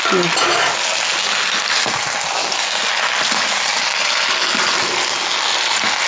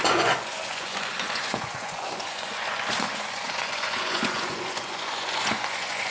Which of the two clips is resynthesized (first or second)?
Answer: second